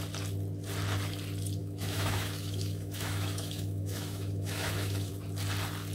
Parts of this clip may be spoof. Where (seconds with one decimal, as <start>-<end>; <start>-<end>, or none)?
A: 1.6-5.1